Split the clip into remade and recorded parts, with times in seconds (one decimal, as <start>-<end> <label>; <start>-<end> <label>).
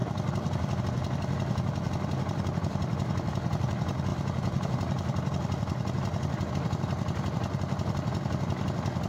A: 0.0-9.1 recorded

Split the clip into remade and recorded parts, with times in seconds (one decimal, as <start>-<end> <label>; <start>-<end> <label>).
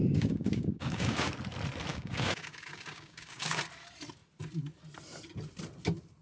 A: 0.0-1.3 remade; 1.3-1.9 recorded; 1.9-3.6 remade; 3.6-6.2 recorded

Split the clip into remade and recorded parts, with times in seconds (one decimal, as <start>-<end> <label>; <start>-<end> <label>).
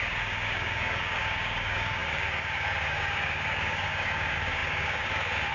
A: 0.0-5.5 remade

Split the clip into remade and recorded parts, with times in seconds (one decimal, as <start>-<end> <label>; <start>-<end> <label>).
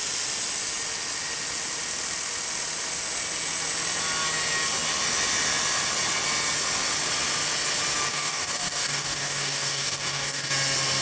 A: 0.0-8.1 recorded; 8.1-10.5 remade; 10.5-11.0 recorded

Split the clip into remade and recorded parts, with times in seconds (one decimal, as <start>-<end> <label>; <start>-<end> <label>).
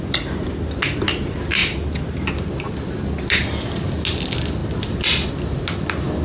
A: 0.0-6.2 recorded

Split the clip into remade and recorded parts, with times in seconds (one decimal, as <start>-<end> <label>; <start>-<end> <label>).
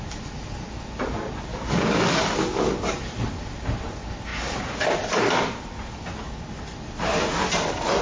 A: 0.0-1.5 recorded; 1.5-2.6 remade; 2.6-8.0 recorded